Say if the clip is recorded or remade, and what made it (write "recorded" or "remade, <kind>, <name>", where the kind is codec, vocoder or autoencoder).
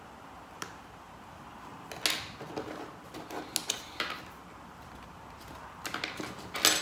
recorded